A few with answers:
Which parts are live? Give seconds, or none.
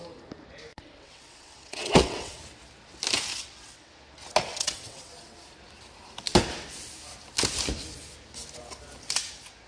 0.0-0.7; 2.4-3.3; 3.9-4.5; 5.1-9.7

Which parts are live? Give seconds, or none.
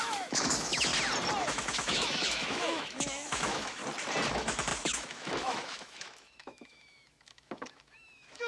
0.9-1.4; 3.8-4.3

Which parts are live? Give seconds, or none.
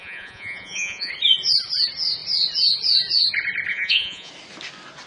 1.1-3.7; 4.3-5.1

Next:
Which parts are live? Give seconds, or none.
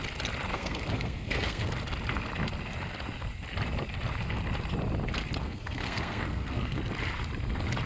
0.0-0.5; 1.7-5.4; 6.8-7.9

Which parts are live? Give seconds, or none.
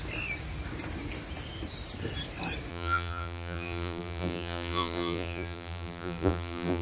0.0-2.7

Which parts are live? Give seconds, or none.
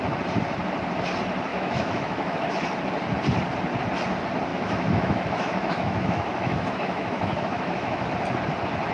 0.0-1.5; 2.5-4.5; 8.0-8.9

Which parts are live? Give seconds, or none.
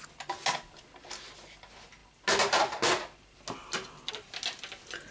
0.0-5.1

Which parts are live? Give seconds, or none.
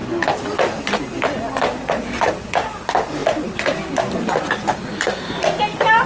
0.0-6.1